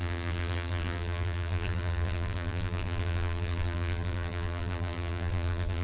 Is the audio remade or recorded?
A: remade